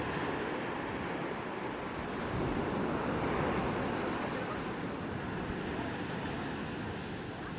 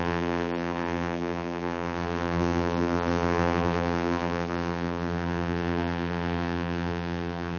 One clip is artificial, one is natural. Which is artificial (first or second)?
second